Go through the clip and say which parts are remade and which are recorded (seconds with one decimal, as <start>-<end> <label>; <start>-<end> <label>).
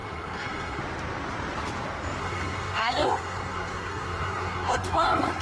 0.0-0.8 remade; 0.8-2.2 recorded; 2.2-5.4 remade